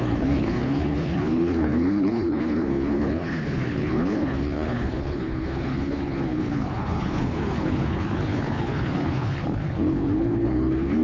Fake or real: fake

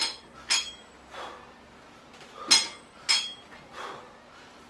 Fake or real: real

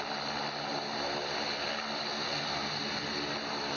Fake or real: real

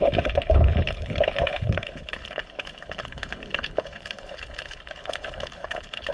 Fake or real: fake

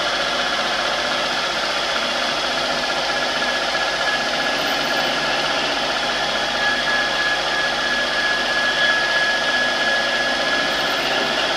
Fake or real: real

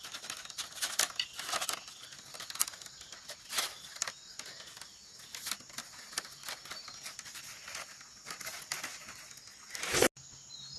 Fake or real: real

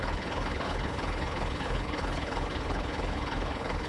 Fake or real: fake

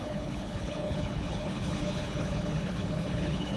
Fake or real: fake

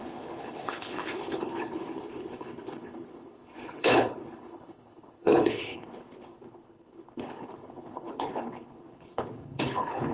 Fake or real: fake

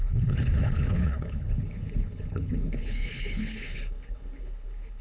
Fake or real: fake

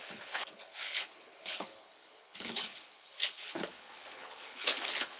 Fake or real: fake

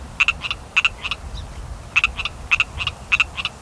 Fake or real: real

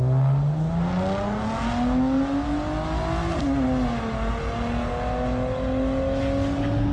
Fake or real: real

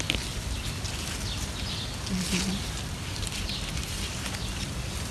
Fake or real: real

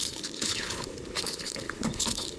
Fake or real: fake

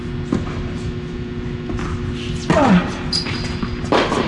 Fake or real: real